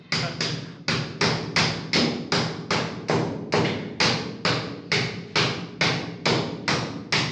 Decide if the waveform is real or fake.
real